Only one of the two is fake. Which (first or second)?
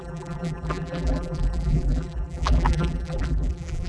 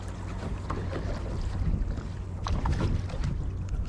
first